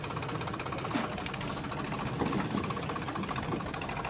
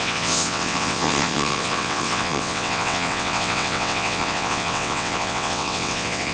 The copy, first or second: second